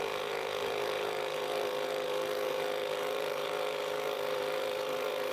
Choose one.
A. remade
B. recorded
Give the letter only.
A